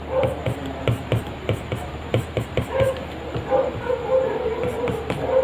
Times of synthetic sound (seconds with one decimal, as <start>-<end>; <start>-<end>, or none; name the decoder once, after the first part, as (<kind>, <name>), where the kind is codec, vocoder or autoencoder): 0.4-3.5 (vocoder, BigVGAN v2)